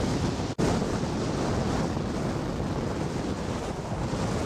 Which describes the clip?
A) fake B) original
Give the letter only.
B